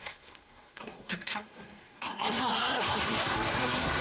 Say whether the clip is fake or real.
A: fake